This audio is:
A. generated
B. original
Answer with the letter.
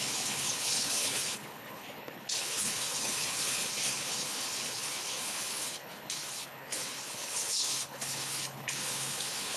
A